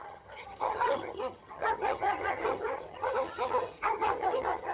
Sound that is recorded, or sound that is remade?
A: remade